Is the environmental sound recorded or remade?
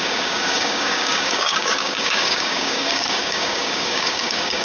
remade